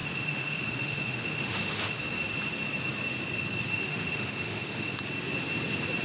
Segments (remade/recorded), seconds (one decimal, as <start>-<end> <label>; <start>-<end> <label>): 0.0-2.0 remade; 2.0-3.7 recorded; 3.7-5.0 remade; 5.0-6.0 recorded